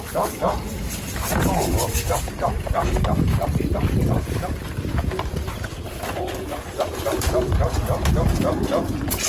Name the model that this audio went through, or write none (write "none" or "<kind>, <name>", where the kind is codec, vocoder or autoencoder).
vocoder, BigVGAN v2